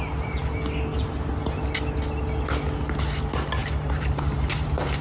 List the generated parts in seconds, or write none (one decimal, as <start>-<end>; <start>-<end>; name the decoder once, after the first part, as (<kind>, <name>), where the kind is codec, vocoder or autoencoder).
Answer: 3.6-5.0 (vocoder, BigVGAN v2)